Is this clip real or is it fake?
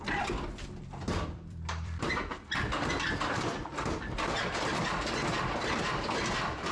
fake